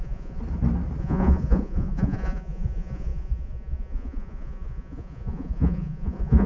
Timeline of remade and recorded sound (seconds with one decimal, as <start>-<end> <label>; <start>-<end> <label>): 0.0-0.4 remade; 0.4-1.0 recorded; 1.0-6.5 remade